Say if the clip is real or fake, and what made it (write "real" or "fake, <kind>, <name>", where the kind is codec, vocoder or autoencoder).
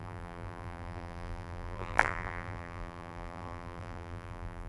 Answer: fake, vocoder, BigVGAN v2